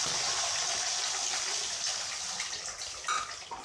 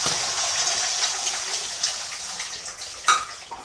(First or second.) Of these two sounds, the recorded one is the first